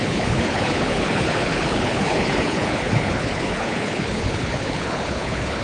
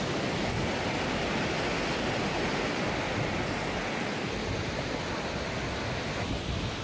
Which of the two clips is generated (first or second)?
first